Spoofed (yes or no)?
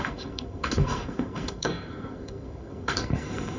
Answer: yes